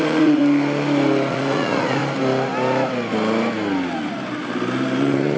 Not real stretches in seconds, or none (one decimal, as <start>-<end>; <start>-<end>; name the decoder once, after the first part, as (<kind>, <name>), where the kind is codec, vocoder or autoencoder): 0.0-0.4 (vocoder, Vocos); 1.3-2.0; 5.0-5.4